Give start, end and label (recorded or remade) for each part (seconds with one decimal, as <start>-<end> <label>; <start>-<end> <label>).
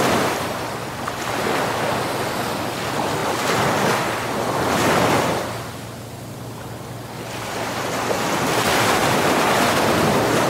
0.0-10.5 recorded